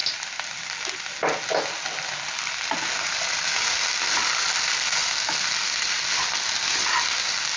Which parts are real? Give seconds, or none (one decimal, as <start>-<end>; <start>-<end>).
0.0-7.6